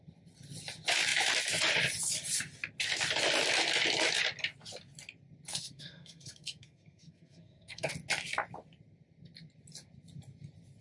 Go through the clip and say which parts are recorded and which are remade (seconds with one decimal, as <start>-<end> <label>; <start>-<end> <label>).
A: 0.0-5.5 recorded; 5.5-7.9 remade; 7.9-10.8 recorded